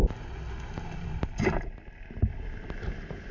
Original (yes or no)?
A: yes